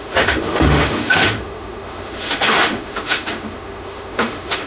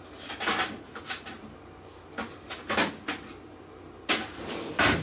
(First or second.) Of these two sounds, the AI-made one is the first